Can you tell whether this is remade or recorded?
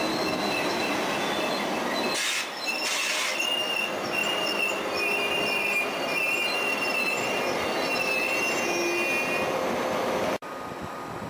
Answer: recorded